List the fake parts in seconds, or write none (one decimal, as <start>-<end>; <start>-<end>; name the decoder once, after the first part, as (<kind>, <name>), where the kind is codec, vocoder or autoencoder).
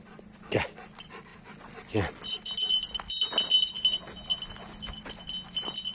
none